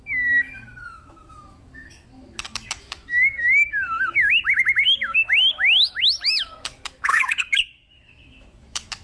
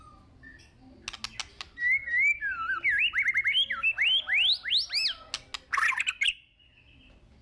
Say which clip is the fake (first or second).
first